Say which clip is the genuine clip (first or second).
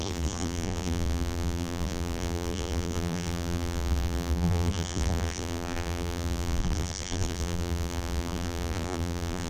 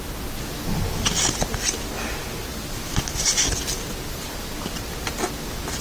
second